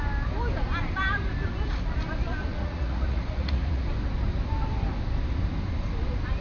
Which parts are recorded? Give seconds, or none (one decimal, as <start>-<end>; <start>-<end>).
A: 0.0-2.5; 3.8-6.4